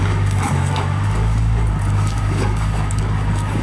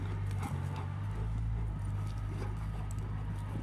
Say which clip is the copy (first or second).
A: first